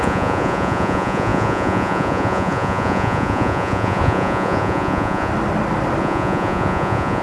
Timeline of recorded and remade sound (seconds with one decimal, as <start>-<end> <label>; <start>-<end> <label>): 0.0-5.3 remade; 5.3-6.0 recorded; 6.0-7.2 remade